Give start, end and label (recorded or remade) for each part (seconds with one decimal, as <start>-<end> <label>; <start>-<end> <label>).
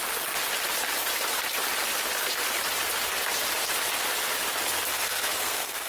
0.0-4.9 recorded; 4.9-5.9 remade